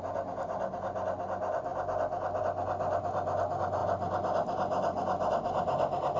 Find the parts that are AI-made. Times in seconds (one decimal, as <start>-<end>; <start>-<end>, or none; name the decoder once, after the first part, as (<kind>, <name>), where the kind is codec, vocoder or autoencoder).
none